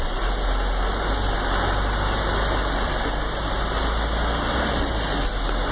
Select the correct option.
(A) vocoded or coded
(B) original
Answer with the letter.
B